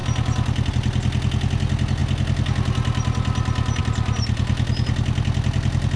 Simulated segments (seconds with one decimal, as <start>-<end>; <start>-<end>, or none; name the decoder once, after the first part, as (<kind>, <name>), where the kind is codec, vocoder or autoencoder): none